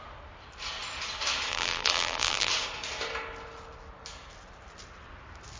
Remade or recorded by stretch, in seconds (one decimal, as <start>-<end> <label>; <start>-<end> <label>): 0.0-1.5 recorded; 1.5-2.5 remade; 2.5-5.6 recorded